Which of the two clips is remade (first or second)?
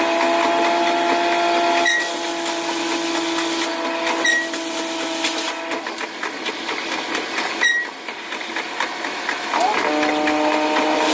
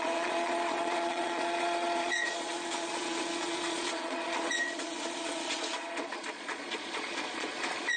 second